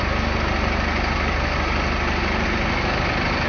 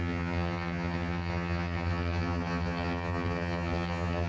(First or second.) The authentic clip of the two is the first